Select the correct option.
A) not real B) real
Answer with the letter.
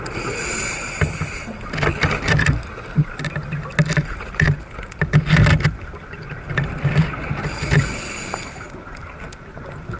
B